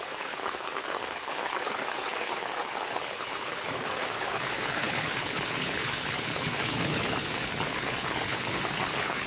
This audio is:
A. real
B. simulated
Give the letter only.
B